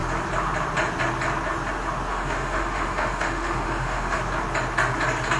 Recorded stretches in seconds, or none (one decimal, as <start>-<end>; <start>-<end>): 0.0-2.1; 4.2-5.4